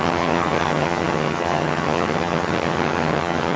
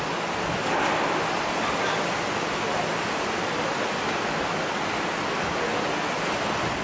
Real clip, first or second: second